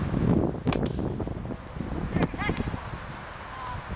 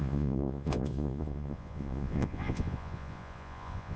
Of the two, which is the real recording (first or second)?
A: first